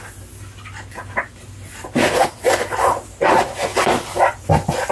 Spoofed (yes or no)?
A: no